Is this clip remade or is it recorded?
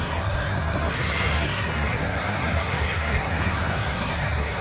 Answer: remade